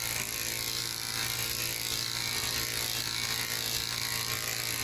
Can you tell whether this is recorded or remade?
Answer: recorded